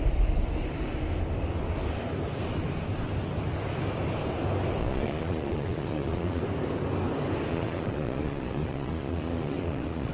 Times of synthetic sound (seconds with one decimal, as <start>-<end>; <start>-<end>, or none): 4.8-6.4; 7.5-10.1